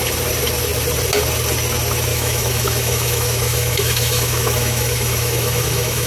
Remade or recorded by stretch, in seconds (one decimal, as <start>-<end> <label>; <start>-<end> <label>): 0.0-2.1 recorded; 2.1-6.1 remade